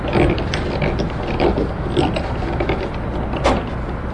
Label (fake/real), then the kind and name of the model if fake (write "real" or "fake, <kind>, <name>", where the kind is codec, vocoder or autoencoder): real